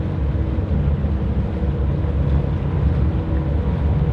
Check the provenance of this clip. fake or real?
real